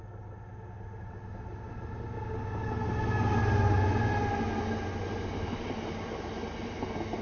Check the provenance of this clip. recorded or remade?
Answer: recorded